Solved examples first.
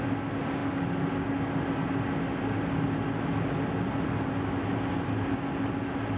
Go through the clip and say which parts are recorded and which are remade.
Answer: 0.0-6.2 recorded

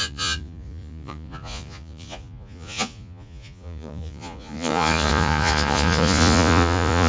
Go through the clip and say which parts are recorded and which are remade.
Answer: 0.0-7.1 remade

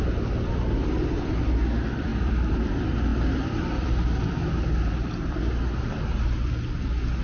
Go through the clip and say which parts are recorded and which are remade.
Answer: 0.0-2.1 recorded; 2.1-2.7 remade; 2.7-3.1 recorded; 3.1-5.8 remade; 5.8-7.2 recorded

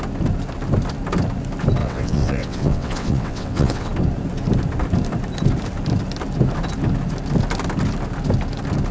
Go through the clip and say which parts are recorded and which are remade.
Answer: 0.0-1.8 recorded; 1.8-3.9 remade; 3.9-8.9 recorded

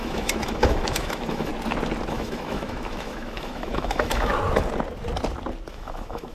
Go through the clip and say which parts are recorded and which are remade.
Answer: 0.0-1.5 remade; 1.5-2.1 recorded; 2.1-4.3 remade; 4.3-5.7 recorded; 5.7-6.3 remade

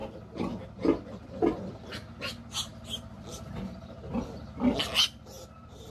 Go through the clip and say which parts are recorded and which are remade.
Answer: 0.0-5.9 recorded

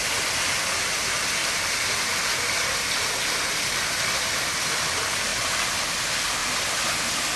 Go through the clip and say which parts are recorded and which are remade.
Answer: 0.0-7.4 recorded

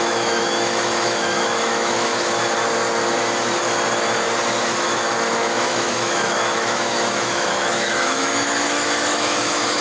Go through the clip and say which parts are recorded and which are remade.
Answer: 0.0-2.4 remade; 2.4-4.6 recorded; 4.6-9.8 remade